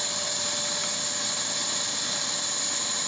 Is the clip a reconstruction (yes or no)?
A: no